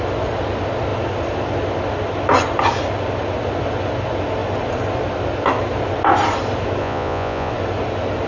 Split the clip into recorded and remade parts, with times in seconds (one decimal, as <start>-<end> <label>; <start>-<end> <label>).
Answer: 0.0-6.8 recorded; 6.8-7.5 remade; 7.5-8.3 recorded